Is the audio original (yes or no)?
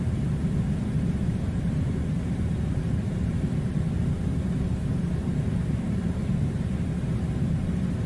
no